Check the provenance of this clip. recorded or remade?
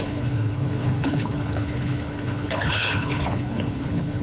remade